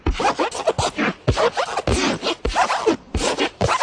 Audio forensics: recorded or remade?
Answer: recorded